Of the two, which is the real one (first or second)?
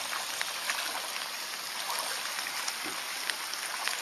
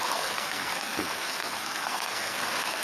first